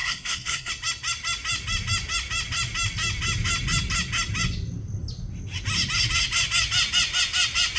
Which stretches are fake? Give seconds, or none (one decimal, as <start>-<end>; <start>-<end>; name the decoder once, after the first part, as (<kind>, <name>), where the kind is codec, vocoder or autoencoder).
0.0-0.7 (codec, SNAC)